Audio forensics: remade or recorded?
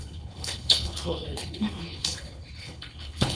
remade